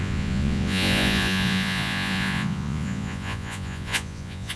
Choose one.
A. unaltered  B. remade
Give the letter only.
B